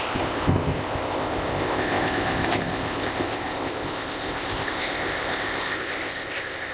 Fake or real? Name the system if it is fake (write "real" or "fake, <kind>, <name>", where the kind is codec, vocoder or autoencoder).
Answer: fake, codec, ZipCodec